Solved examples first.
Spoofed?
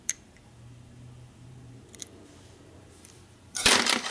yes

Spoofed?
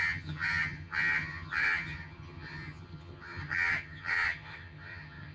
yes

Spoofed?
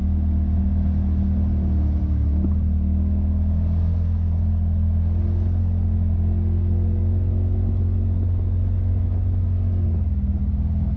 no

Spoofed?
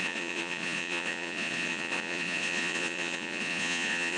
yes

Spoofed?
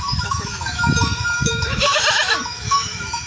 yes